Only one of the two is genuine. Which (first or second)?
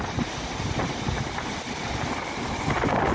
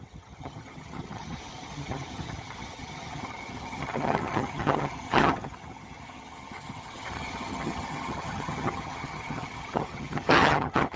first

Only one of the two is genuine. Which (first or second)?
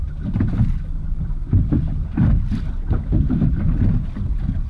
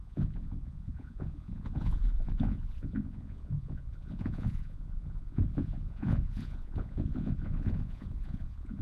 first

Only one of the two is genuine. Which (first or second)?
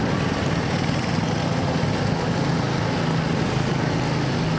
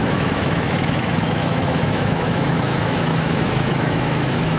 first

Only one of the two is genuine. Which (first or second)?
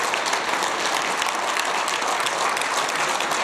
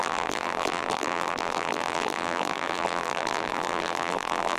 first